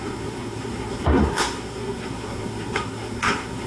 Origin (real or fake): fake